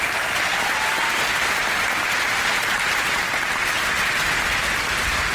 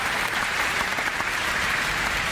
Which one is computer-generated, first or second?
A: second